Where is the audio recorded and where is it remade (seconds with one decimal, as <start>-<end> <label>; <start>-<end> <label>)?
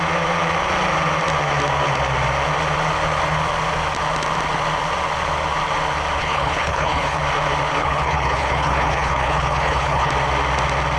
0.0-6.2 recorded; 6.2-7.2 remade; 7.2-7.8 recorded; 7.8-10.1 remade; 10.1-11.0 recorded